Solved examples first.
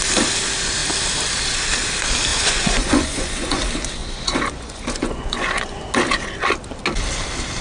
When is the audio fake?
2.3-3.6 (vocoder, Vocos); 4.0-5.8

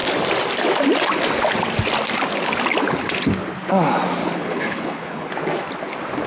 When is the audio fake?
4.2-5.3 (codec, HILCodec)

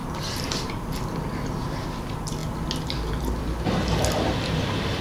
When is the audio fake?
0.0-0.7 (vocoder, BigVGAN v2)

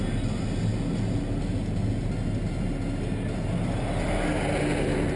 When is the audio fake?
none

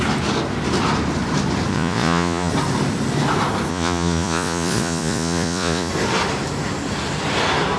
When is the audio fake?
1.7-2.5 (vocoder, Vocos); 3.7-5.9

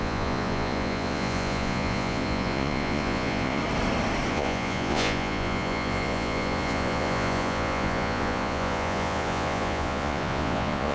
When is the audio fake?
0.0-3.6 (vocoder, Vocos); 4.3-10.9

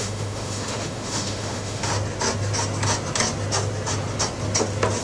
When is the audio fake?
0.0-1.9 (autoencoder, DAC-VAE)